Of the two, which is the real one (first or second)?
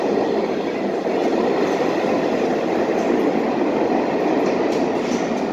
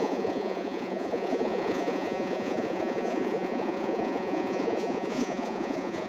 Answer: first